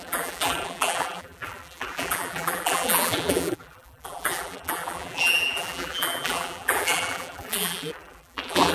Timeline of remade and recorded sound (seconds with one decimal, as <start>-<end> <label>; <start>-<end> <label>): 0.0-8.7 remade